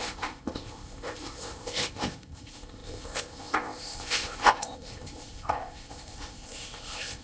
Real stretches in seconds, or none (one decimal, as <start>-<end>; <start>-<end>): none